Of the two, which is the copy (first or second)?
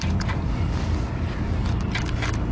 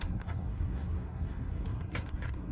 second